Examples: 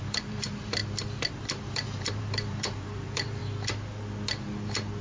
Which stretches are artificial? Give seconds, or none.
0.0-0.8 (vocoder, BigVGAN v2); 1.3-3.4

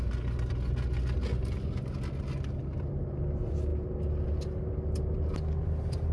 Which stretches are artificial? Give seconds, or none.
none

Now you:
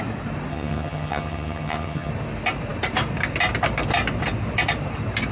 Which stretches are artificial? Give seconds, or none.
0.5-2.1 (vocoder, HiFi-GAN)

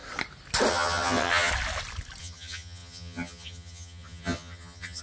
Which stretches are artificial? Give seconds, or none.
0.7-1.5 (vocoder, HiFi-GAN); 2.2-5.0

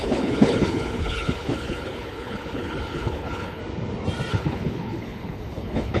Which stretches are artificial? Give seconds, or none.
0.0-3.6 (codec, HILCodec); 4.3-6.0

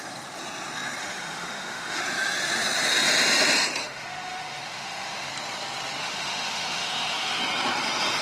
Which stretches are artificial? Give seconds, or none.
1.0-2.0 (autoencoder, DAC-VAE); 3.8-5.3; 6.0-7.4

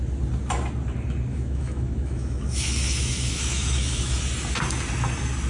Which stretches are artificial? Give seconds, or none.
1.3-4.2 (autoencoder, DAC-VAE)